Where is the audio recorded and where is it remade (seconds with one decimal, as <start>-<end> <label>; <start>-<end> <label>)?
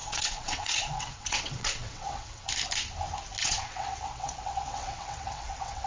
0.0-2.5 remade; 2.5-3.4 recorded; 3.4-5.9 remade